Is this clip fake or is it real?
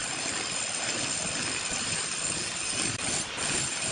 real